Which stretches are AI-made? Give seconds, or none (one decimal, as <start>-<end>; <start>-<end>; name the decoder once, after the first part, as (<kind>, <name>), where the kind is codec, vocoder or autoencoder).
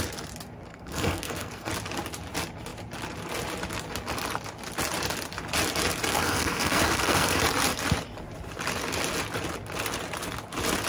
0.7-1.7 (codec, SNAC); 6.1-7.4